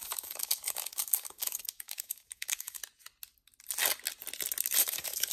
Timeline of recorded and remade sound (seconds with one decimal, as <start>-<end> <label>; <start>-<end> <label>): 0.0-2.8 remade; 2.8-4.8 recorded; 4.8-5.3 remade